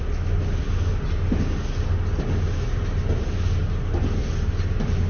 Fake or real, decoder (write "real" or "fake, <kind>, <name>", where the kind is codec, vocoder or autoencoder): real